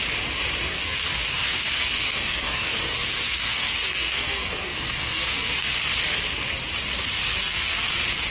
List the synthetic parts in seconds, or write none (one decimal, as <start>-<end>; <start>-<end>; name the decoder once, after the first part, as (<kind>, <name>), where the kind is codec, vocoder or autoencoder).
0.7-5.7 (codec, SNAC); 7.4-7.9